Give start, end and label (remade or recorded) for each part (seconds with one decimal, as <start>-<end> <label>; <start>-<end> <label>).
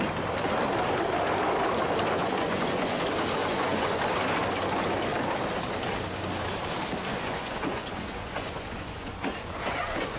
0.0-2.2 recorded; 2.2-3.0 remade; 3.0-3.4 recorded; 3.4-4.0 remade; 4.0-7.1 recorded; 7.1-10.2 remade